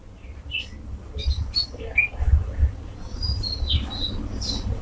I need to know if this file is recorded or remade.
recorded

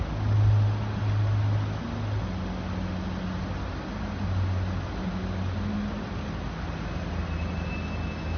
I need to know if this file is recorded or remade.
recorded